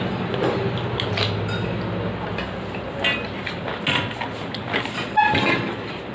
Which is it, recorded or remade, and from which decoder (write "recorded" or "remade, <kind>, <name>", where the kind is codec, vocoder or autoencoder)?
recorded